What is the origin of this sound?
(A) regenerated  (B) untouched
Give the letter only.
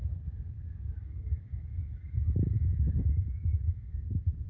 B